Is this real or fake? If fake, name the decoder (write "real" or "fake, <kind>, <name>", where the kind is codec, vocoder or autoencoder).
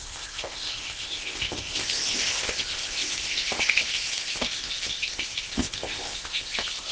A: fake, codec, ZipCodec